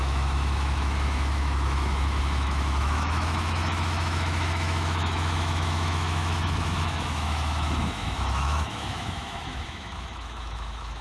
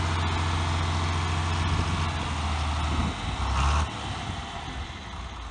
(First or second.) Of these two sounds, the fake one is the first